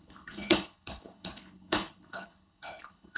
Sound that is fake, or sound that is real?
fake